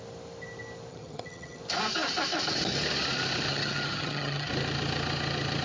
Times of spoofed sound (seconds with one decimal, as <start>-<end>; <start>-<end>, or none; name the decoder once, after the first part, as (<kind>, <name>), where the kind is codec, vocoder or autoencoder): 0.9-1.6 (vocoder, HiFi-GAN); 3.5-4.5